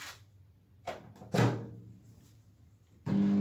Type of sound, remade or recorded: recorded